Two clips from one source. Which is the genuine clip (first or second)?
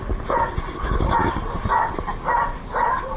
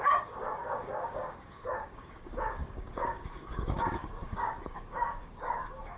first